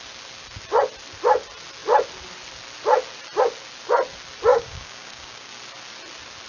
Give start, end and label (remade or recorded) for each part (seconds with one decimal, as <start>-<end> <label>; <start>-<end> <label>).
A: 0.0-4.5 recorded; 4.5-5.5 remade; 5.5-6.5 recorded